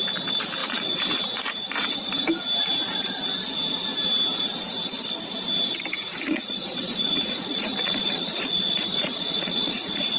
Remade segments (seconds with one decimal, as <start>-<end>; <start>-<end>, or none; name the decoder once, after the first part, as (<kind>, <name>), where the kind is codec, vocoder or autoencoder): 0.6-1.9 (vocoder, Vocos); 6.1-10.2